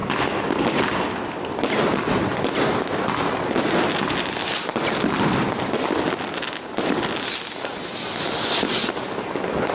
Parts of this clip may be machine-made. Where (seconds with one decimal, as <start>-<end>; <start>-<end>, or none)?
none